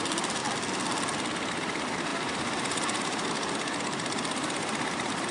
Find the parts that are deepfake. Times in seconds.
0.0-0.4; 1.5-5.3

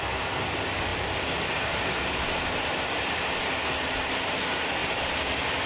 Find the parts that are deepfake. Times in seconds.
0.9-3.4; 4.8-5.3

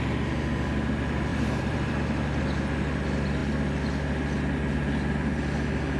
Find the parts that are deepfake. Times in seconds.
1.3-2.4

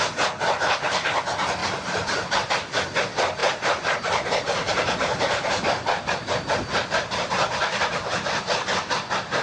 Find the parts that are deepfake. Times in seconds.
1.6-2.5; 3.4-6.1; 6.7-7.6